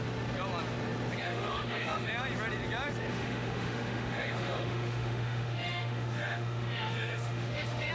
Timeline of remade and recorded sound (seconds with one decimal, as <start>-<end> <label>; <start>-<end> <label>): 0.0-1.2 recorded; 1.2-2.1 remade; 2.1-3.1 recorded; 3.1-7.9 remade